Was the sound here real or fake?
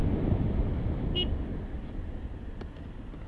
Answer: real